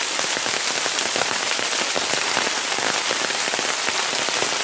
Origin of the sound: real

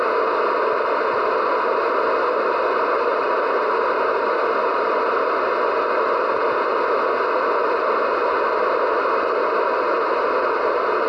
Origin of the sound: real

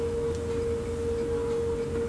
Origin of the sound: real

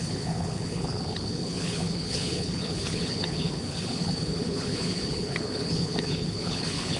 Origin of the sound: fake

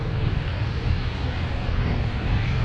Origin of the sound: fake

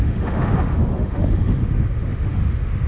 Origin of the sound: fake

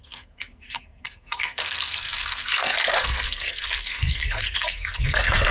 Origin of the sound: fake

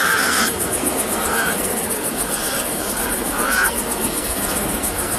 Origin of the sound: fake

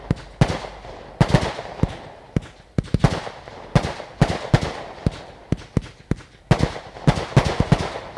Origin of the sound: real